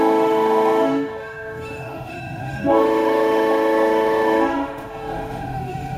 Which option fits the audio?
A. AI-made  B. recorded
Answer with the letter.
A